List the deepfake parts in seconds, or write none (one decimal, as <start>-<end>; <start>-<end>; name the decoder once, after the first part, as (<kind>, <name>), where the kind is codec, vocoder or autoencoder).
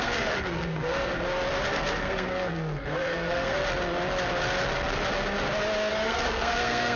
0.0-1.1 (codec, SNAC); 1.7-3.6; 5.9-7.0